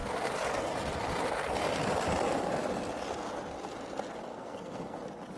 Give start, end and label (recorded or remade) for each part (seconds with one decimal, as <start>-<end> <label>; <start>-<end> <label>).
0.0-4.3 recorded; 4.3-5.0 remade; 5.0-5.4 recorded